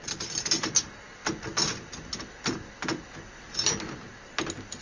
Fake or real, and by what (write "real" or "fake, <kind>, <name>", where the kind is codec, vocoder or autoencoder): real